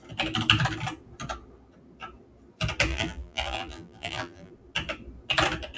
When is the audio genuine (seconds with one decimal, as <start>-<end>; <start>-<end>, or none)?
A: 0.0-2.9; 4.5-5.8

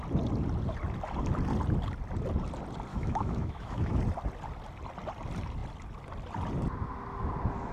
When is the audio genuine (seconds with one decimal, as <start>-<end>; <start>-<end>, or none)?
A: 0.0-2.9; 4.0-7.7

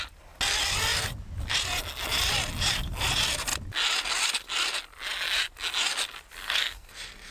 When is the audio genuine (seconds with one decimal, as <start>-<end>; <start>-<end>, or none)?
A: 0.0-6.4

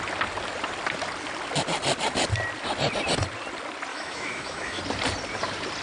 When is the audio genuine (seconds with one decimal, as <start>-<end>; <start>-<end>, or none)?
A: 0.0-3.9; 4.8-5.8

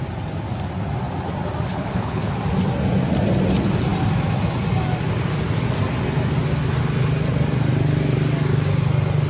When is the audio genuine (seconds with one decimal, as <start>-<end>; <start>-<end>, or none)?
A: 0.0-1.7; 2.4-9.3

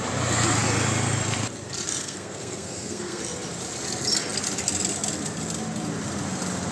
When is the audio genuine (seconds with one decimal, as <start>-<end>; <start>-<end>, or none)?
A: 0.0-2.0; 3.2-6.7